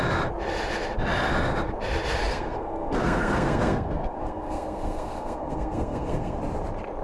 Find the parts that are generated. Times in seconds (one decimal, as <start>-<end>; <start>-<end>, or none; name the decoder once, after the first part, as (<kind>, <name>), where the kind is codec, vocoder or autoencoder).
2.2-6.4 (codec, SNAC)